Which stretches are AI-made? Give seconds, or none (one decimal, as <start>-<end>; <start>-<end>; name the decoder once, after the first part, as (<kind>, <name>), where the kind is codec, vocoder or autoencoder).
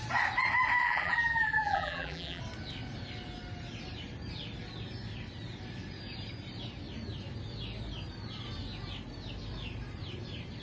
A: 0.8-2.4 (vocoder, BigVGAN v2)